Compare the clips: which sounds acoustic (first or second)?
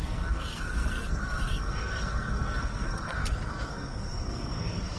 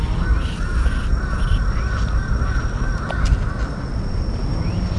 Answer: second